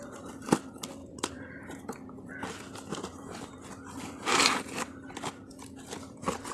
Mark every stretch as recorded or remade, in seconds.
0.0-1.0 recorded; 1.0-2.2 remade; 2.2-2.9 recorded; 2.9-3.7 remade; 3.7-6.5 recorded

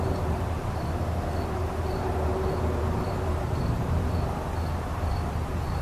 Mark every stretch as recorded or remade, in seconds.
0.0-5.8 remade

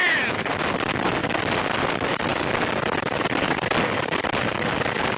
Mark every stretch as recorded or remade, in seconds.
0.0-5.2 recorded

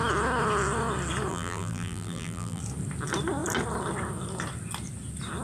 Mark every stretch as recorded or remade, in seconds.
0.0-1.3 recorded; 1.3-2.6 remade; 2.6-5.4 recorded

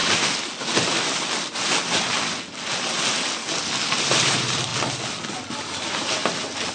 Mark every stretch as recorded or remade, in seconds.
0.0-4.0 recorded; 4.0-4.7 remade; 4.7-5.6 recorded; 5.6-6.2 remade; 6.2-6.7 recorded

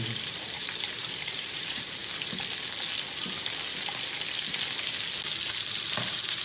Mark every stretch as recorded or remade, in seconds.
0.0-2.0 remade; 2.0-5.8 recorded; 5.8-6.4 remade

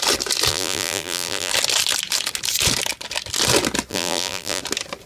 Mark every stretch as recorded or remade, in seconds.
0.0-0.5 recorded; 0.5-1.5 remade; 1.5-3.9 recorded; 3.9-4.6 remade; 4.6-5.1 recorded

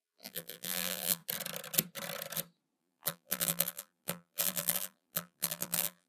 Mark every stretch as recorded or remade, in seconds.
0.0-1.2 remade; 1.2-2.8 recorded; 2.8-6.1 remade